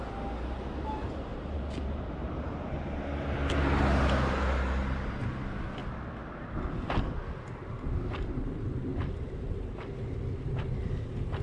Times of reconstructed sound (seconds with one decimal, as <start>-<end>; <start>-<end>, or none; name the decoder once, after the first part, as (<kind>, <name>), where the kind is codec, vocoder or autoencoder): 1.3-3.0 (vocoder, BigVGAN v2)

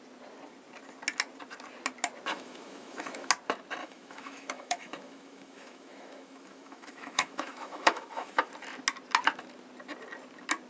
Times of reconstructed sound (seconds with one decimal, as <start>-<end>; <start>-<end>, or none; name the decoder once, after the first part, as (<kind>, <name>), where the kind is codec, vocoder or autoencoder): 2.3-3.3 (autoencoder, DAC-VAE); 3.8-8.5

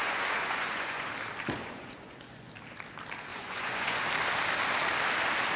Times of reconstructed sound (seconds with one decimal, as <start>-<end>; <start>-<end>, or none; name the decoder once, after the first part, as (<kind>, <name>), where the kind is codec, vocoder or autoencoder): 0.0-1.1 (vocoder, Vocos); 1.6-2.5; 3.3-4.0

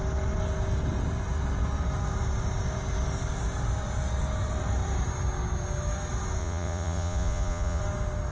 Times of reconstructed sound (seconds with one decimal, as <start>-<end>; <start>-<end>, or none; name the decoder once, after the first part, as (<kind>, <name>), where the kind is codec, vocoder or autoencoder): 6.4-7.8 (vocoder, Vocos)

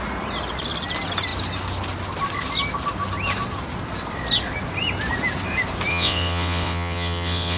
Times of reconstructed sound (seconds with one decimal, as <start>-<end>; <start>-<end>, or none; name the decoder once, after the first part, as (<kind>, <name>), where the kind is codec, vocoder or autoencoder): 5.9-7.6 (vocoder, WaveNeXt)

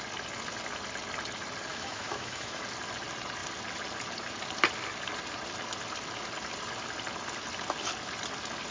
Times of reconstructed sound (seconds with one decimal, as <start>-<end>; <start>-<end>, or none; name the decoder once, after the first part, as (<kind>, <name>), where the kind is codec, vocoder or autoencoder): 1.7-2.6 (autoencoder, DAC-VAE)

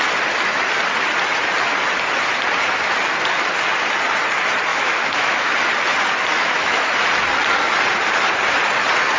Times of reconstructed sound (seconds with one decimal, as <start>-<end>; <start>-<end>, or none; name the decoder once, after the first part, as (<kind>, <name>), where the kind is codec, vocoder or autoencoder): 4.7-5.5 (autoencoder, DAC-VAE); 6.3-6.9